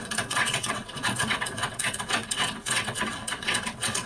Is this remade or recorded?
remade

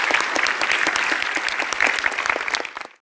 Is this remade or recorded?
recorded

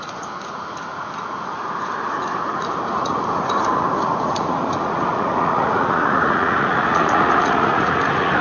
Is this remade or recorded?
remade